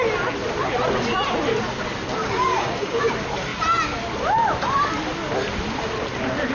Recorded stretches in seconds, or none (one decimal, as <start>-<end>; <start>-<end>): 0.0-2.2; 3.1-6.5